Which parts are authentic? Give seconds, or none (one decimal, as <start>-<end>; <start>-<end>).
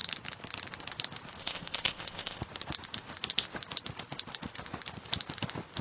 0.0-1.4; 2.4-5.8